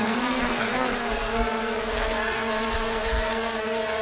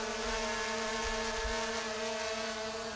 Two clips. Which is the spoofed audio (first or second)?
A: first